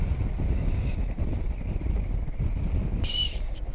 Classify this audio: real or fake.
real